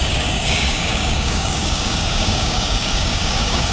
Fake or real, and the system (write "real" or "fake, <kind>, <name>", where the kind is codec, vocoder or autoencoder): fake, codec, DAC